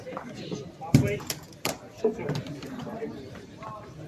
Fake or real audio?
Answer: fake